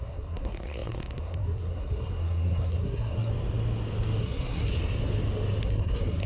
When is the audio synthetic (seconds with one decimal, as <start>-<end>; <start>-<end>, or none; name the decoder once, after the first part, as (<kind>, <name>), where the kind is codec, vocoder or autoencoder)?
0.0-3.3 (codec, SNAC); 4.2-4.7; 5.6-6.3